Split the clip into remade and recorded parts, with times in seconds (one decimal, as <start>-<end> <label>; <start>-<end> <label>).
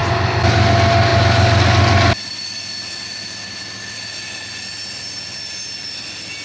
0.0-6.4 recorded